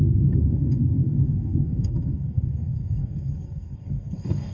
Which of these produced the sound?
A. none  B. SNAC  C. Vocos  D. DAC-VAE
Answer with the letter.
B